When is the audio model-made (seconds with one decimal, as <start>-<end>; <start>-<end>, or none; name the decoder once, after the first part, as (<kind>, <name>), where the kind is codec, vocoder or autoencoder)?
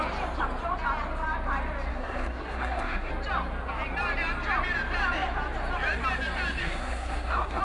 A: 1.9-3.1 (codec, SNAC); 6.6-7.6